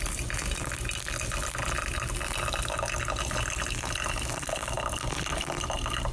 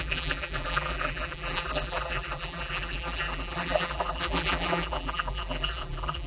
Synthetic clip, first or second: second